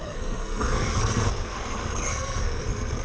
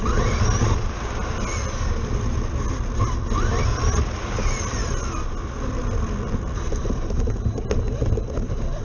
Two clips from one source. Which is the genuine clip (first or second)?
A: second